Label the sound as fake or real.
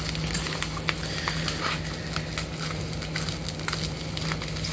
real